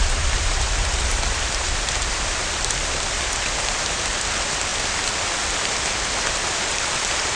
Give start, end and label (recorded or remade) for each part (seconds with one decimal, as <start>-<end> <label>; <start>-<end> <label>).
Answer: 0.0-3.0 remade; 3.0-7.4 recorded